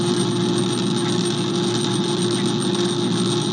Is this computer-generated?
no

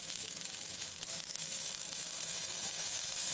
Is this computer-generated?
yes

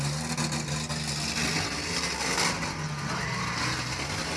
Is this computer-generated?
no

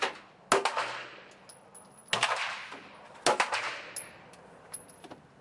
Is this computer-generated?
no